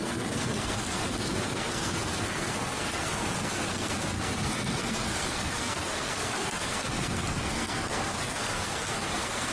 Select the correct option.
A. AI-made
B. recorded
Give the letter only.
A